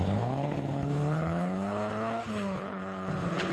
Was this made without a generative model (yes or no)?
no